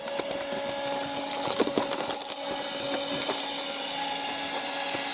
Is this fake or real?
real